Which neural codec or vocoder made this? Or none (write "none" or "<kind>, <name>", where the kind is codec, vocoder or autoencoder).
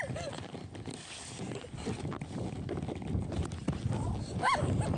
none